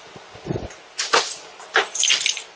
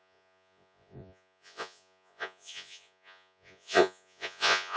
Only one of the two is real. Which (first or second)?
first